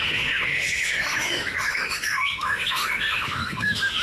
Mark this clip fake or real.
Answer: fake